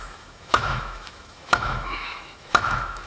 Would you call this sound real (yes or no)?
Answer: no